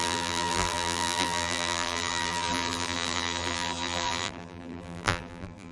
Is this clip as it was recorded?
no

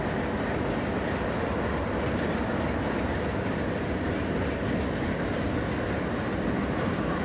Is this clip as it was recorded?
yes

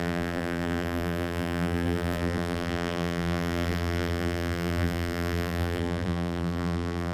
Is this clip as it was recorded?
no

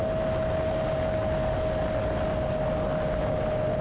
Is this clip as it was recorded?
yes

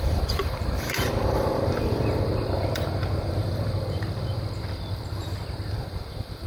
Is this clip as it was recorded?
no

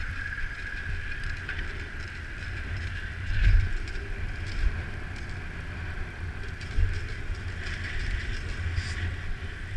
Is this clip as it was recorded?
no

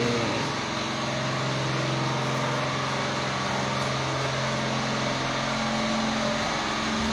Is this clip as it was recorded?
yes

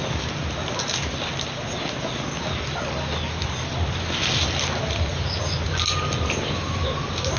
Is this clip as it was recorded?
yes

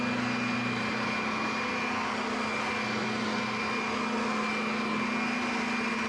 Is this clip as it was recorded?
yes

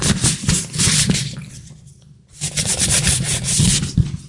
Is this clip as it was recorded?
no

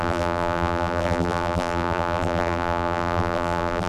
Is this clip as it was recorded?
no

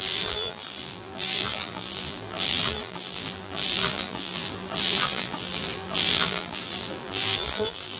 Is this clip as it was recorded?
no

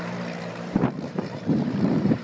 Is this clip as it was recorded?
no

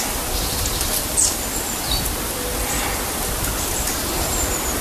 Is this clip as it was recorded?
yes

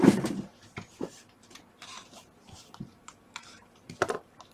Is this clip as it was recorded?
no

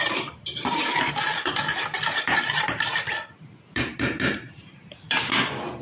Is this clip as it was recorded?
no